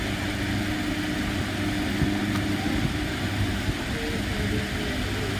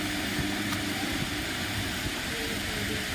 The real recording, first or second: first